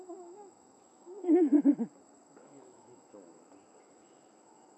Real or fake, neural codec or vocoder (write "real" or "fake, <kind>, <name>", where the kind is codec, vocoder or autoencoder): fake, autoencoder, DAC-VAE